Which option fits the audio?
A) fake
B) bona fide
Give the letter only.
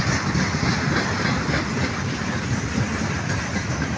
B